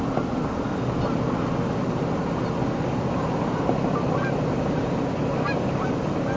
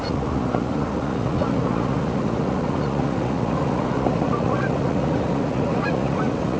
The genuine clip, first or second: first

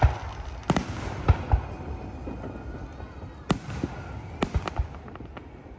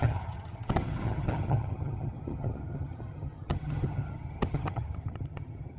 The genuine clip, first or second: first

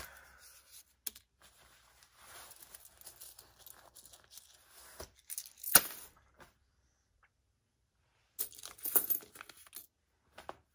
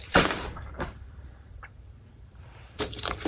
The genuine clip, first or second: first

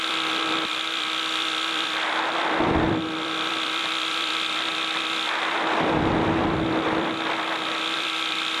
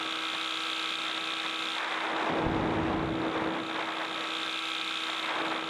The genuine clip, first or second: second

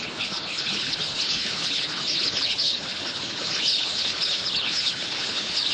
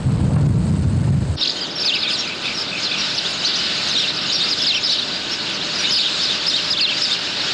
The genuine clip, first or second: second